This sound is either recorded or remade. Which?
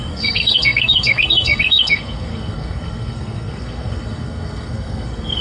remade